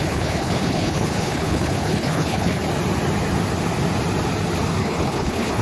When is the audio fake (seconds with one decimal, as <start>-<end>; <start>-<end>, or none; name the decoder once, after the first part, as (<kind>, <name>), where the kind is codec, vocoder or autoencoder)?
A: 0.0-2.6 (codec, HILCodec); 4.8-5.6